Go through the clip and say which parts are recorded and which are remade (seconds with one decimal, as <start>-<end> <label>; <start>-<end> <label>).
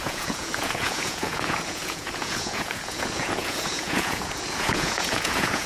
0.0-5.7 remade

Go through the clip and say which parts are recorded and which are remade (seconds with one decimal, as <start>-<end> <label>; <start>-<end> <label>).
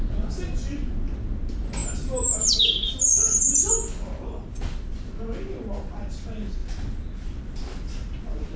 0.0-8.6 recorded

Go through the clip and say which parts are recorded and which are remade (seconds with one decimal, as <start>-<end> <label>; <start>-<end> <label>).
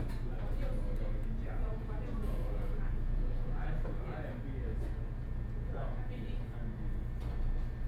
0.0-1.4 recorded; 1.4-3.5 remade; 3.5-4.7 recorded; 4.7-6.5 remade; 6.5-7.9 recorded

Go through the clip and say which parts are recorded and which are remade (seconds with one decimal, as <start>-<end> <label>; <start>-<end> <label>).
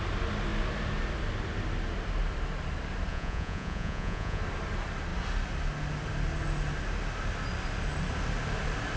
0.0-3.1 recorded; 3.1-4.4 remade; 4.4-9.0 recorded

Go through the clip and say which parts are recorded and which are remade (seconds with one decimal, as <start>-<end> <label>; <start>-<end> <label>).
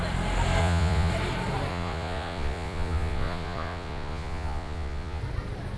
0.0-0.6 recorded; 0.6-1.1 remade; 1.1-1.7 recorded; 1.7-5.2 remade; 5.2-5.8 recorded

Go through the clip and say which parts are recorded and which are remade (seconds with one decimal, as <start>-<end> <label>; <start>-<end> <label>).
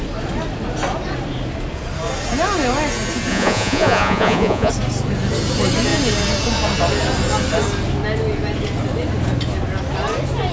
0.0-3.3 recorded; 3.3-4.7 remade; 4.7-10.5 recorded